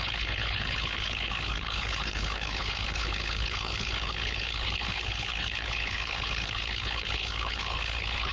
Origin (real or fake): fake